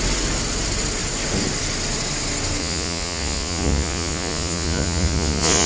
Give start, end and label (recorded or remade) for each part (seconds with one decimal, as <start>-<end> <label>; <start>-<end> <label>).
0.0-2.6 recorded; 2.6-5.7 remade